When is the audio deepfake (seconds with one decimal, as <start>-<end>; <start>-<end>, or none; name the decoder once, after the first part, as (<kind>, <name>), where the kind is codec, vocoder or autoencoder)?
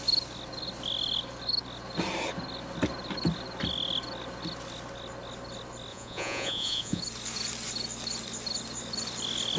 5.9-7.0 (vocoder, Vocos)